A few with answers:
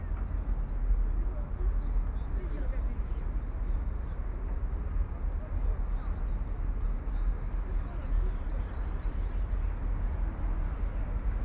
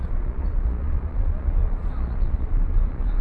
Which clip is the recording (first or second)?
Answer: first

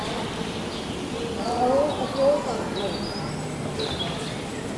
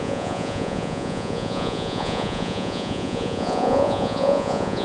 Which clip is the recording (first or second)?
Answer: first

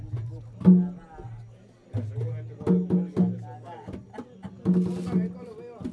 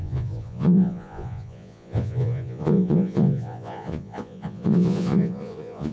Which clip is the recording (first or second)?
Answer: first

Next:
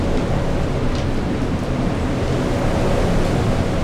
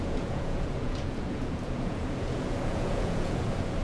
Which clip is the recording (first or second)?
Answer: first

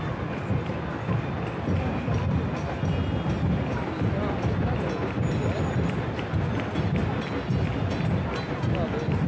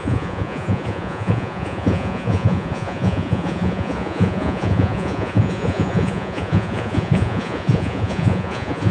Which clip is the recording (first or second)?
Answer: first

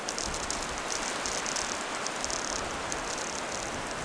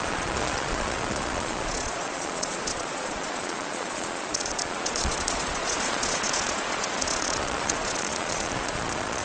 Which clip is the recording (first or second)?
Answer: first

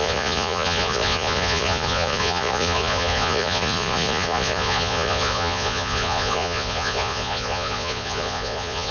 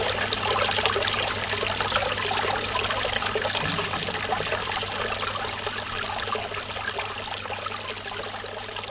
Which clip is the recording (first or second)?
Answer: second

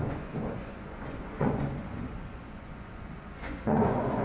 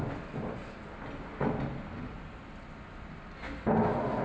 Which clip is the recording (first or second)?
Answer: second